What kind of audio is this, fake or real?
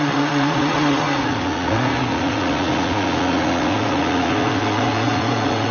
fake